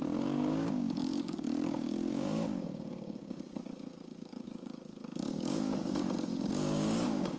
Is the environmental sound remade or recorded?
remade